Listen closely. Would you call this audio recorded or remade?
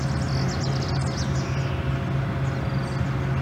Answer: recorded